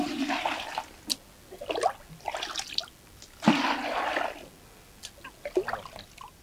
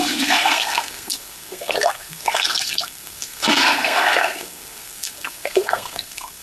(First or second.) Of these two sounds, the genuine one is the first